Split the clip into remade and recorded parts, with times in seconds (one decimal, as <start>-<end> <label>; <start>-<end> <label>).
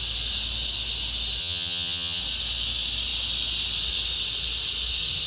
0.0-1.4 recorded; 1.4-2.2 remade; 2.2-5.3 recorded